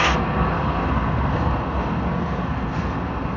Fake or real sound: fake